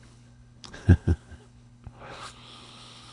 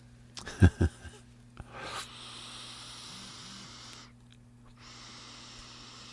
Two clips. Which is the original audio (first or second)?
second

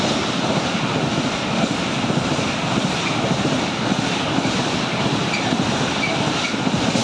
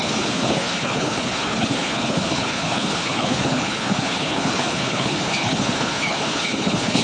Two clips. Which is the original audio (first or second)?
first